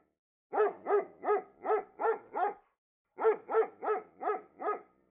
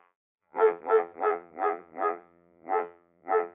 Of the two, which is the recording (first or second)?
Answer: first